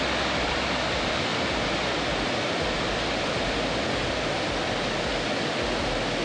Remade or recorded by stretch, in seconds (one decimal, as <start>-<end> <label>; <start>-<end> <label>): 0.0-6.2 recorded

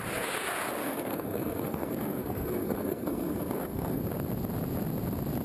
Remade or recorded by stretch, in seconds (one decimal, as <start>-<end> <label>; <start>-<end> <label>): 0.0-0.8 recorded; 0.8-4.0 remade; 4.0-5.4 recorded

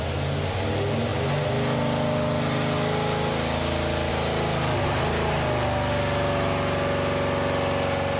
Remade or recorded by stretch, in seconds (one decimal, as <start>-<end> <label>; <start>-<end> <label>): 0.0-8.2 recorded

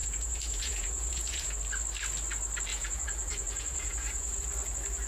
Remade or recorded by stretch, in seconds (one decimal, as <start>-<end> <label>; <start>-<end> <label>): 0.0-1.6 remade; 1.6-2.7 recorded; 2.7-4.4 remade; 4.4-5.1 recorded

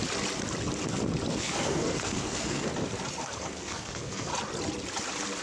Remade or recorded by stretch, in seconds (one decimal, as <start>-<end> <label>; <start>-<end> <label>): 0.0-1.3 recorded; 1.3-2.7 remade; 2.7-3.2 recorded; 3.2-4.3 remade; 4.3-5.4 recorded

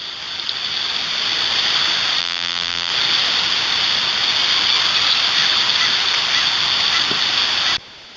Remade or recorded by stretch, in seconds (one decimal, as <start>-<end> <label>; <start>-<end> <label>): 0.0-2.2 recorded; 2.2-2.9 remade; 2.9-8.2 recorded